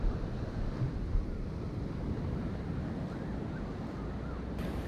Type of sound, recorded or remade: recorded